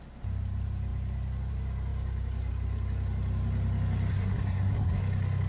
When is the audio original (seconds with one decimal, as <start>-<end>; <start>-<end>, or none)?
0.0-4.1; 5.0-5.5